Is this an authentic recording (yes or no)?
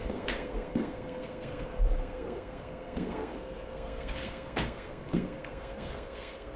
no